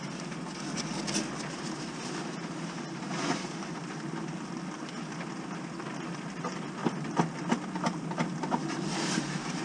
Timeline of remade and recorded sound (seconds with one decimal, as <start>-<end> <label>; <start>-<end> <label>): 0.0-9.6 recorded